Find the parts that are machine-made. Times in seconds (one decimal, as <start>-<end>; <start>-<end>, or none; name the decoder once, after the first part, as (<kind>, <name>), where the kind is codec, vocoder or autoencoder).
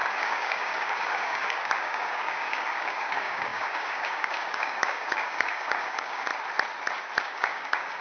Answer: 0.0-6.3 (codec, DAC); 7.2-8.0